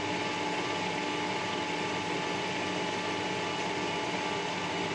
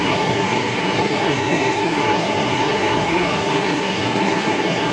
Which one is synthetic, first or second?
second